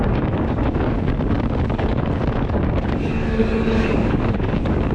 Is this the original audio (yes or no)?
no